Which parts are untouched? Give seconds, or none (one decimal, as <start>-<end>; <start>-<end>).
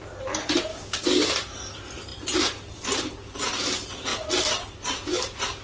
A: 0.0-0.7; 1.3-5.6